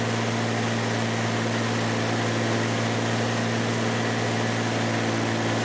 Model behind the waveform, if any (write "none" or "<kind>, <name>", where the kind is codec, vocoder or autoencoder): none